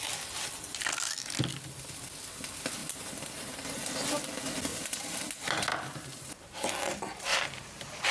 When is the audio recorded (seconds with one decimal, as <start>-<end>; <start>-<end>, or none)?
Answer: 0.0-2.8; 3.9-4.7; 5.2-5.7; 6.3-7.3